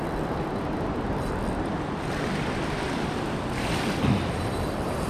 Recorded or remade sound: remade